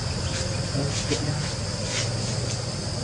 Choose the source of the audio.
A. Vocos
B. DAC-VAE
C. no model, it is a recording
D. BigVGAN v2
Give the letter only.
C